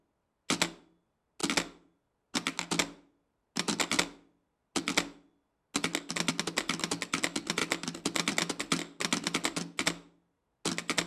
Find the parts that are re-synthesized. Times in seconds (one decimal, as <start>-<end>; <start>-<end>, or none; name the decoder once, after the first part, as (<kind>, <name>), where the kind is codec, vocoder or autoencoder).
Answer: none